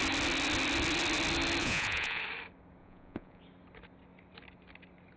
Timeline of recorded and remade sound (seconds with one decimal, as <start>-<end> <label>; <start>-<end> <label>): 0.0-1.6 recorded; 1.6-2.2 remade; 2.2-2.8 recorded; 2.8-3.4 remade; 3.4-5.2 recorded